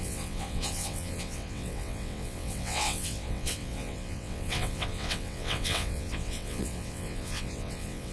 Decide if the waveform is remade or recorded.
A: remade